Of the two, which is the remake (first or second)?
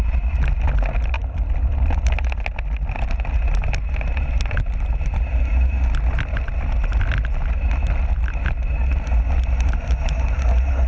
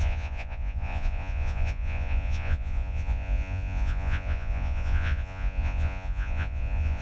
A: second